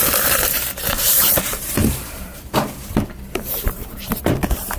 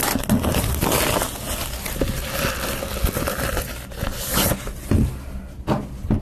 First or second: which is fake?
first